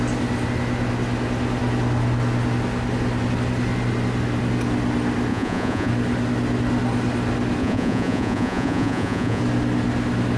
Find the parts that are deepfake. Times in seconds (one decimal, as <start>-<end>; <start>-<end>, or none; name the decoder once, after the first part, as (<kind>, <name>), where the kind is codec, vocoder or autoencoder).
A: 5.3-5.9 (vocoder, Vocos); 7.6-9.4